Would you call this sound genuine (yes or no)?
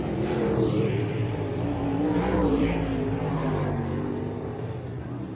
no